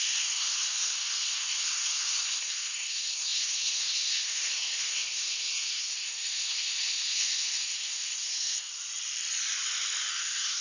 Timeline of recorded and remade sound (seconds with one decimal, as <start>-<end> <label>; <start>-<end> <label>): 0.0-8.7 remade; 8.7-10.1 recorded; 10.1-10.6 remade